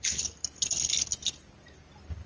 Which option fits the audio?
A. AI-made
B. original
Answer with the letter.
B